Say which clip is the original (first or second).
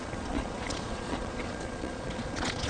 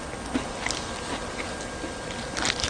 second